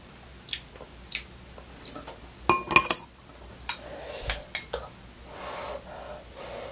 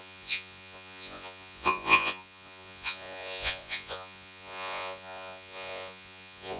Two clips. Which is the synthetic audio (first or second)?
second